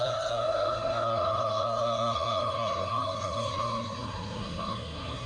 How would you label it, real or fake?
fake